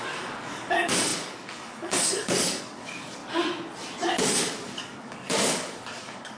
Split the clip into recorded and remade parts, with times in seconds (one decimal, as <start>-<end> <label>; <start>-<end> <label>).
0.0-3.2 remade; 3.2-4.1 recorded; 4.1-6.4 remade